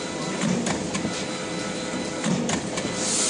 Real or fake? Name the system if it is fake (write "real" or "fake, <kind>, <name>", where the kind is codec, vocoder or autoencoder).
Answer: real